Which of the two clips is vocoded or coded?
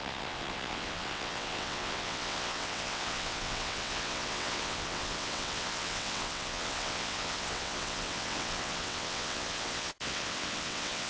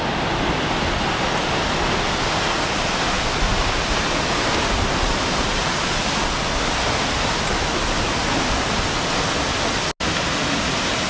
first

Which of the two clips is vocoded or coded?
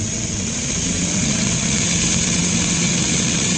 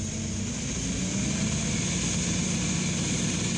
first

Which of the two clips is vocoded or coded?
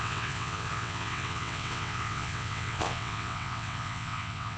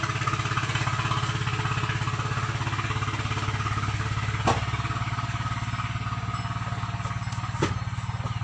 first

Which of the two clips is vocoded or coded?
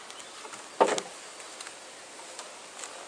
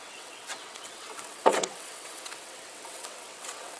second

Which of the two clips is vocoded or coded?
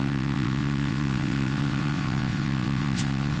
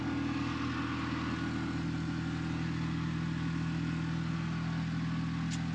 first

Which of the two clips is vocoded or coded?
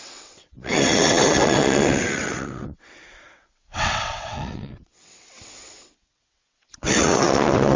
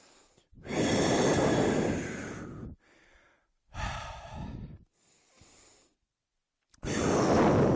first